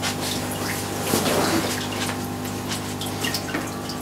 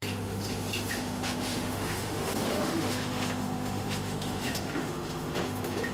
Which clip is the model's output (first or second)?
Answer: second